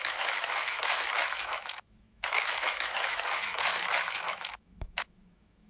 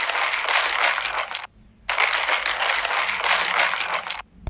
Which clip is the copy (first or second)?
first